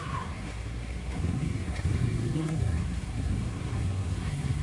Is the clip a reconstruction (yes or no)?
yes